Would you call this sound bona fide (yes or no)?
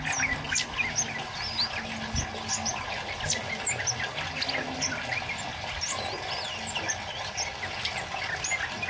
yes